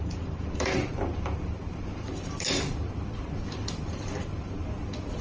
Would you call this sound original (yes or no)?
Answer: no